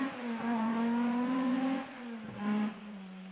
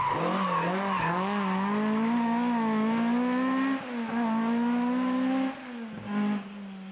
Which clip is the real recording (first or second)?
second